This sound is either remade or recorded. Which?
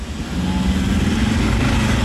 recorded